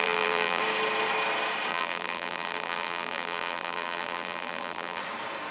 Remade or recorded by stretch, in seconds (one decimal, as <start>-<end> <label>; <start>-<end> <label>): 0.0-0.6 remade; 0.6-1.7 recorded; 1.7-5.0 remade; 5.0-5.5 recorded